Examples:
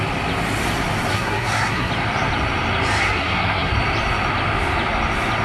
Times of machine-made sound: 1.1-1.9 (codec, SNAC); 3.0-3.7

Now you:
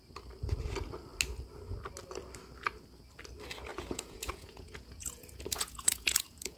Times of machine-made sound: 3.7-6.6 (vocoder, Vocos)

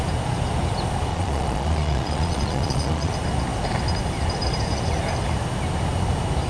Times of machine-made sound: 1.1-3.1 (vocoder, Vocos)

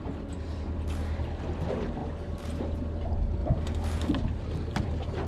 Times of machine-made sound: none

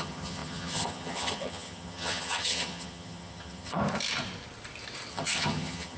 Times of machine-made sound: 0.0-3.8 (vocoder, HiFi-GAN); 5.1-6.0

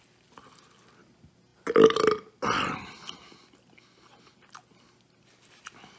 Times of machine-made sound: none

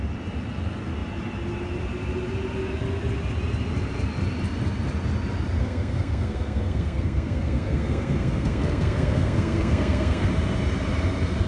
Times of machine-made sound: 5.6-10.3 (codec, SNAC)